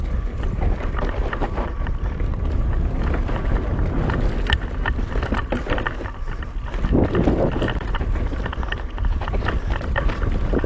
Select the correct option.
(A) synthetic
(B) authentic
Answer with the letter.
B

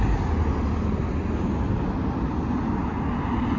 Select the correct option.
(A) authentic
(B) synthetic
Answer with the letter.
A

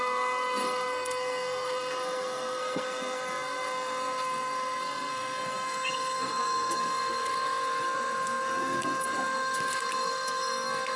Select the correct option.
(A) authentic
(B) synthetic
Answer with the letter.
B